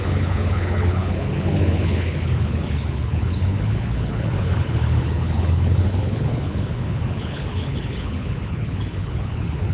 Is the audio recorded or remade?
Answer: remade